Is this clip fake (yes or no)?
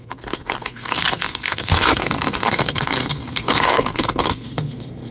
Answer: yes